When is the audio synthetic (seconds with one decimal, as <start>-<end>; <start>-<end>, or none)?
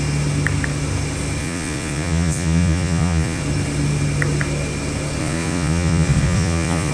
1.4-3.4; 5.2-6.9